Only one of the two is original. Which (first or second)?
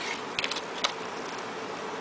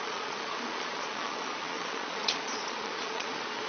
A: first